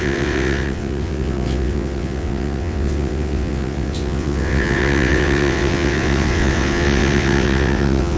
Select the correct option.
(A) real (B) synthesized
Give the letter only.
B